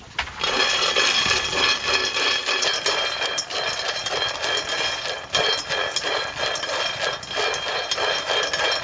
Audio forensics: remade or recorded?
recorded